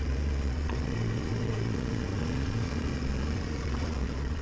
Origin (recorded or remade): remade